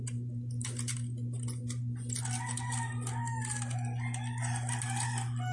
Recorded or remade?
recorded